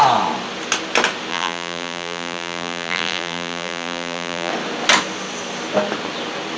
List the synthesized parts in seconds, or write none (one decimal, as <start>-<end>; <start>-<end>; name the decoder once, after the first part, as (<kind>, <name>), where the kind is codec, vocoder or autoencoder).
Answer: 1.3-4.5 (vocoder, BigVGAN v2)